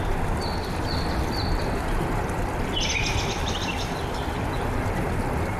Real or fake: real